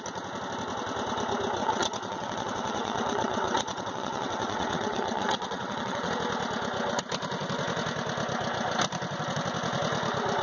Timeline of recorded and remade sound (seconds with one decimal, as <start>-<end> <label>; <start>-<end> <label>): 0.0-1.6 recorded; 1.6-6.1 remade; 6.1-10.4 recorded